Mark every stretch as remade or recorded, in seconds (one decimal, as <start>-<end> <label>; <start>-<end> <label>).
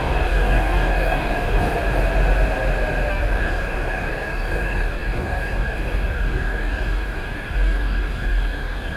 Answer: 0.0-1.7 remade; 1.7-3.1 recorded; 3.1-9.0 remade